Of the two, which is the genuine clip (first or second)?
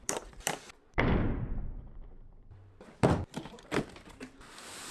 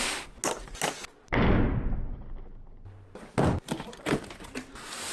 second